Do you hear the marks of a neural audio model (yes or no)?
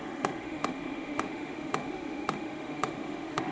yes